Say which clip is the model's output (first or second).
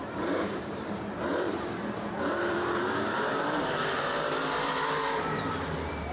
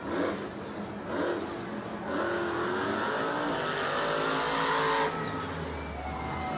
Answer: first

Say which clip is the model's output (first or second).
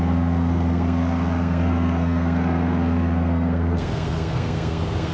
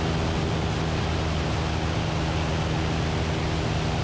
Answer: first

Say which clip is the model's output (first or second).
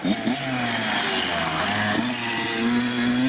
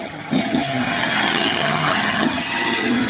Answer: second